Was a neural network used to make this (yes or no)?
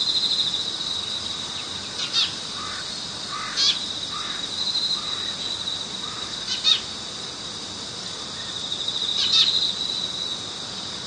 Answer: no